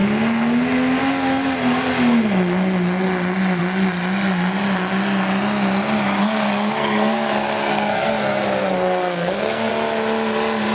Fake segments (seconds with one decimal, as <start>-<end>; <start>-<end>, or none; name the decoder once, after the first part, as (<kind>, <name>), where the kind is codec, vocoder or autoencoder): 6.2-9.7 (codec, SNAC)